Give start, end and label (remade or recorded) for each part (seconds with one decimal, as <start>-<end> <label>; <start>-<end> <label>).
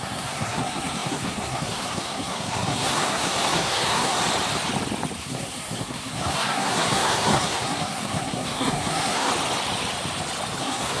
0.0-4.2 remade; 4.2-5.2 recorded; 5.2-9.3 remade; 9.3-10.6 recorded; 10.6-11.0 remade